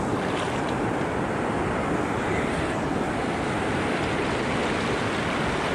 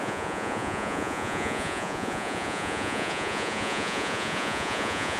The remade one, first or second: second